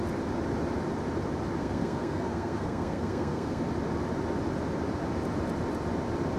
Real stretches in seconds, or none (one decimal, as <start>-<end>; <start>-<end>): 0.0-1.6; 3.6-6.4